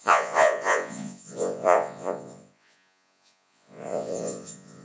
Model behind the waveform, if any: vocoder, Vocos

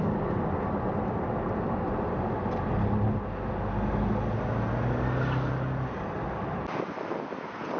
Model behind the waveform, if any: none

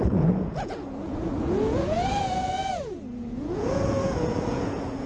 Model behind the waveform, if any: vocoder, Vocos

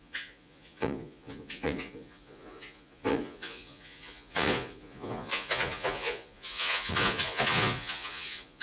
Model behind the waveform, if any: vocoder, Vocos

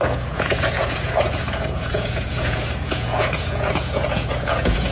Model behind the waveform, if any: vocoder, Vocos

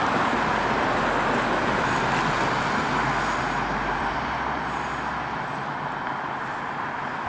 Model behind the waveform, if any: none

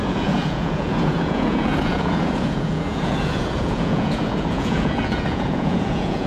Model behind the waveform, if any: vocoder, Vocos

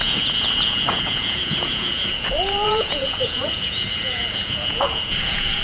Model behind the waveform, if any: vocoder, Vocos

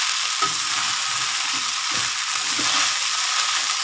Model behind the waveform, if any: none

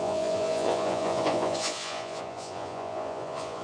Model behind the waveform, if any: vocoder, Vocos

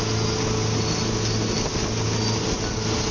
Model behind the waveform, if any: none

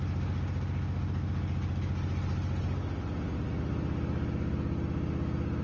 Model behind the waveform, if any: none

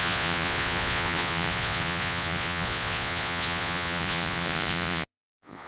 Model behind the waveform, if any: vocoder, Vocos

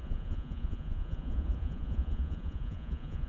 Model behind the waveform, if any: vocoder, Vocos